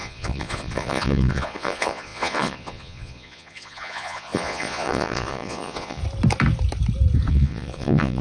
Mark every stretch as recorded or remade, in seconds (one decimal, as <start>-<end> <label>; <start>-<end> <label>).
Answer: 0.0-6.0 remade; 6.0-7.3 recorded; 7.3-8.2 remade